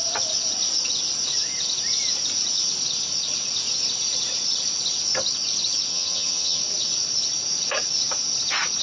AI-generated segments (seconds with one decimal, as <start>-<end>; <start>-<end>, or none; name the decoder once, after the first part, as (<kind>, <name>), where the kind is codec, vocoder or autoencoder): 5.9-6.6 (vocoder, HiFi-GAN)